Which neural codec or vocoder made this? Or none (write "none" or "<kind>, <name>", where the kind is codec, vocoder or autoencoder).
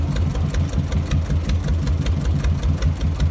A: none